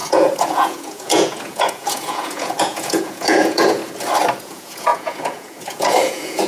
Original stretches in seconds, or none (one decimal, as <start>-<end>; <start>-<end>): 3.8-4.4